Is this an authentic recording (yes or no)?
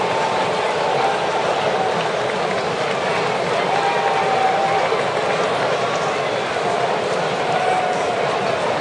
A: yes